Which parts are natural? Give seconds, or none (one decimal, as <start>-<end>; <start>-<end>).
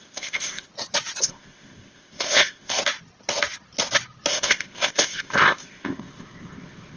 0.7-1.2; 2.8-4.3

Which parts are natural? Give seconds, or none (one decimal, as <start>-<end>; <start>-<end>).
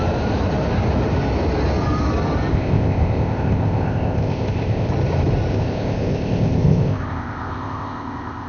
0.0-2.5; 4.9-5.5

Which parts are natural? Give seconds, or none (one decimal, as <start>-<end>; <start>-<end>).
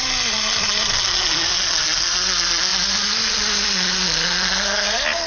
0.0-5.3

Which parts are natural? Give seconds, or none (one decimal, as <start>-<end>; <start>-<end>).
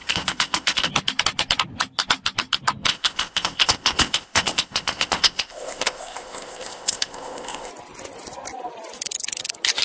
0.9-2.9; 7.7-9.8